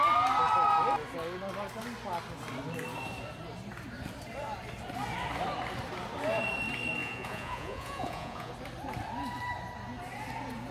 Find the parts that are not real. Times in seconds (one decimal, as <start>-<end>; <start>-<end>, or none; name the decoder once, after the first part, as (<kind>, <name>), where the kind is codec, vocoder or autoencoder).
7.0-8.5 (vocoder, Vocos)